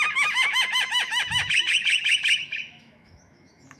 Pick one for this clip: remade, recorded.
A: remade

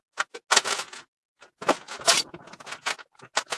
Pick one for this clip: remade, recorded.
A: recorded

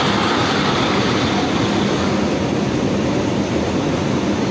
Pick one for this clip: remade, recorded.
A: recorded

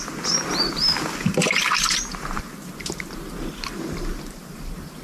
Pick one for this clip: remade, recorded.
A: recorded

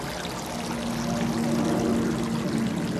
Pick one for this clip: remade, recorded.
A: recorded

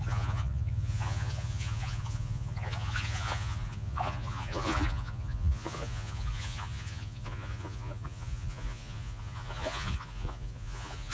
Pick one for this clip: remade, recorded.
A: remade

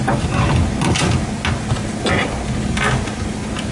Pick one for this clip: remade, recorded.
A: recorded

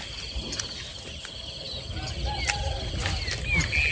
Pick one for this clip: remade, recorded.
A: recorded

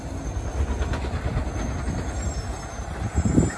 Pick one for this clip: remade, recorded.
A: recorded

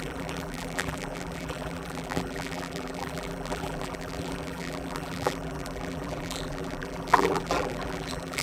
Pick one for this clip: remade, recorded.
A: remade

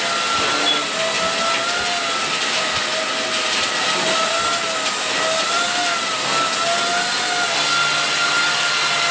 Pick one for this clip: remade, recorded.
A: recorded